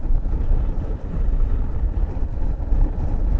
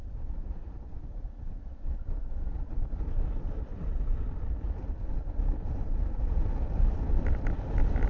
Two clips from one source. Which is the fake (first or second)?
first